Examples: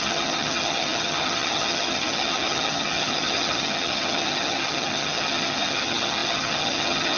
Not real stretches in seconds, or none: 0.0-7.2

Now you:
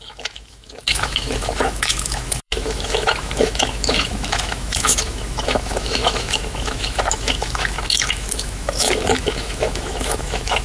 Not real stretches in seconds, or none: 0.0-10.6

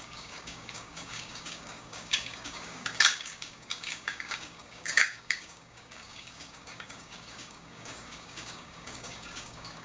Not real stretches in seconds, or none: 0.0-9.8

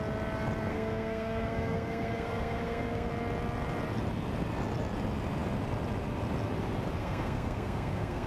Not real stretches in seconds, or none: 0.7-3.1; 7.0-8.3

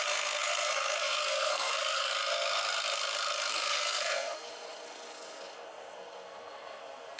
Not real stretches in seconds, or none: 0.0-2.1; 3.5-7.2

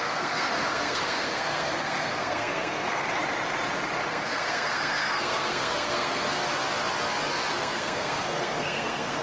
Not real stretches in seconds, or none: 0.0-3.0; 4.1-6.4; 7.5-9.2

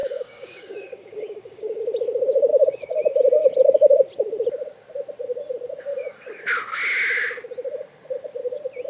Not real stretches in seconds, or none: 0.0-1.8; 2.5-3.0; 5.9-6.4

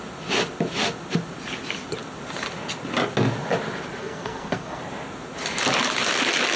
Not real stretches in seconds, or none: 4.0-4.8